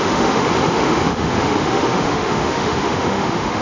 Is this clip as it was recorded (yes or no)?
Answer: no